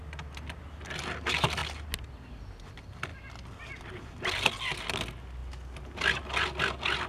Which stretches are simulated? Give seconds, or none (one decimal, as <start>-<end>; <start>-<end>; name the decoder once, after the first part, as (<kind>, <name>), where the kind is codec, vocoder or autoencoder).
none